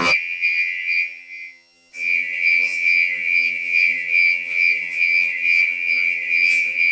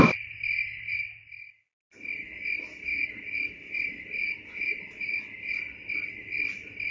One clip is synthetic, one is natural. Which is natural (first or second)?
second